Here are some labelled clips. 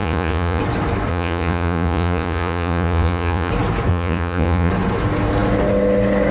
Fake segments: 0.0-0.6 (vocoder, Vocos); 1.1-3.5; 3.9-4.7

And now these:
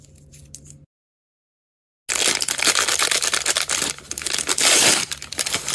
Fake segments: none

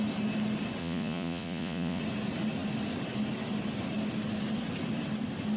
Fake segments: 0.8-2.0 (vocoder, Vocos)

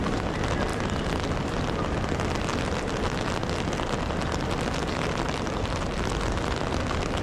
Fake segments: none

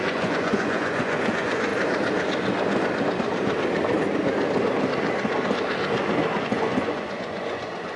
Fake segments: 0.0-1.7 (vocoder, Vocos); 6.4-8.0